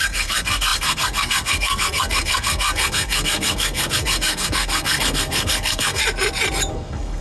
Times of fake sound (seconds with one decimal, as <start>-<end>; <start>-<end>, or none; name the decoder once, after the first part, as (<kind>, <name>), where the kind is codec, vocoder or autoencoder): 0.0-6.0 (codec, SNAC); 6.7-7.2